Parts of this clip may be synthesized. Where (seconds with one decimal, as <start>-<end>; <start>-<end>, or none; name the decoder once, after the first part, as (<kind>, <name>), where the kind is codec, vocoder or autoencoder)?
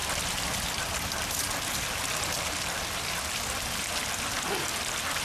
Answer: none